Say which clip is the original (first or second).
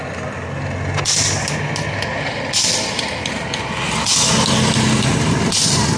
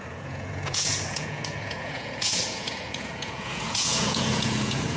first